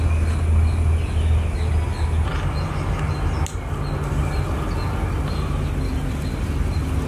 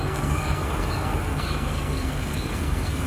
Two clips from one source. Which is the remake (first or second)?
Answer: second